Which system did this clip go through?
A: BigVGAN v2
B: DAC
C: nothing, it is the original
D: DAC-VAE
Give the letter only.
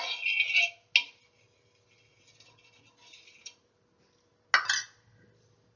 C